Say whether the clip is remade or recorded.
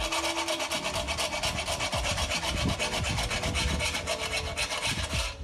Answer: recorded